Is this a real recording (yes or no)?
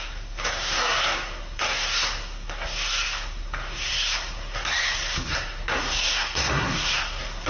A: no